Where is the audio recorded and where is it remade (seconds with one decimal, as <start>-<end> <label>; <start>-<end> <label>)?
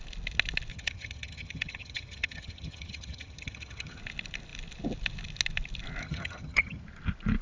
0.0-0.7 recorded; 0.7-4.0 remade; 4.0-6.0 recorded; 6.0-6.8 remade; 6.8-7.4 recorded